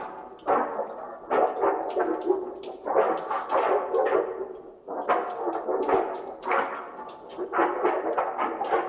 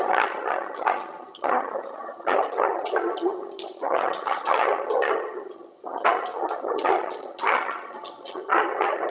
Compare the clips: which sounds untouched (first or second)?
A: first